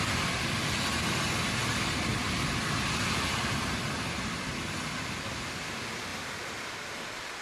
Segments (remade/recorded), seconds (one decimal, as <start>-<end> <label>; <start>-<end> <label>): 0.0-7.4 recorded